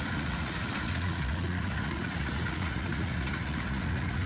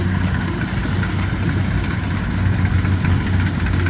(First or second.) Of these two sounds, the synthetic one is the first